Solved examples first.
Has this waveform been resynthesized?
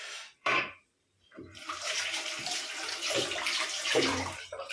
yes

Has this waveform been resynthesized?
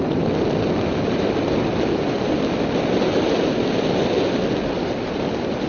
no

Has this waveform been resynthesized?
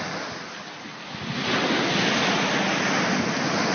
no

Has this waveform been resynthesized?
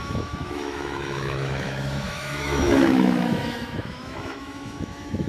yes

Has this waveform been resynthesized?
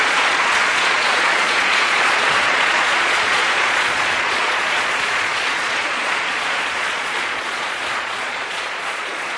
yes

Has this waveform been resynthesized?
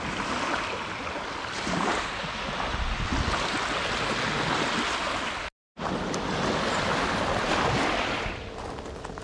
no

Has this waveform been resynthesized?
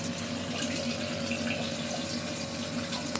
no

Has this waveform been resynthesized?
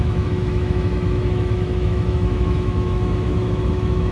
yes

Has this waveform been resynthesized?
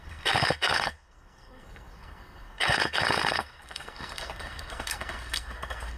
yes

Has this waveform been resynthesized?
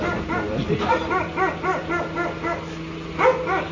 no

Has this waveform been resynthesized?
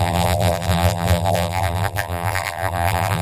yes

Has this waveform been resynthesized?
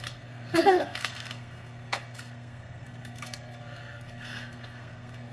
yes